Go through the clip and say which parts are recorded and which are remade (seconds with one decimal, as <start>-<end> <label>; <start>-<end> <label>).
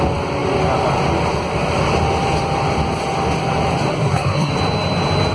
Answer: 0.0-3.9 recorded; 3.9-4.5 remade; 4.5-5.3 recorded